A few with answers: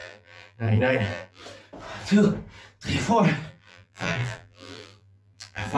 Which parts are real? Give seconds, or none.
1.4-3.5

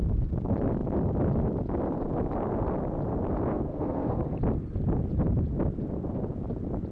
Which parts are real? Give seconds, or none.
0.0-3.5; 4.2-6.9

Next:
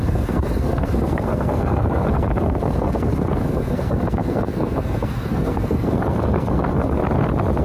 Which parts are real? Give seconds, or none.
7.0-7.6

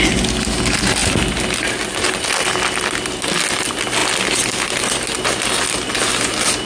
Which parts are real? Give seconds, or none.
0.0-6.7

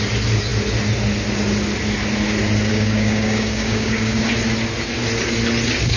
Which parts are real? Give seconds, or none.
0.0-2.7; 4.2-6.0